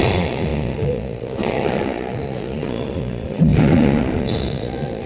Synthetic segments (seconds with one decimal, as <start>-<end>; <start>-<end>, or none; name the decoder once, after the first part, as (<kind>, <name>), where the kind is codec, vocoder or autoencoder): 0.0-5.1 (vocoder, Vocos)